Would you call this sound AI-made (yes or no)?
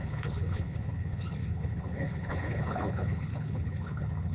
yes